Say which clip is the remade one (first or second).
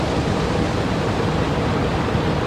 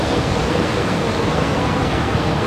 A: second